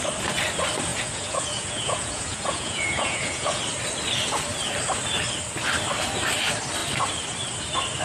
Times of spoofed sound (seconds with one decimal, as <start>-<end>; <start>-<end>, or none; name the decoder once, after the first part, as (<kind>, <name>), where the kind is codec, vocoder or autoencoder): 0.9-3.6 (vocoder, Vocos)